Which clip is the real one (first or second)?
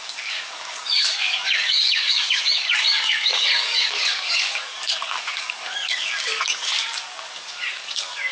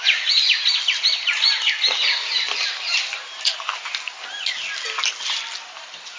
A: second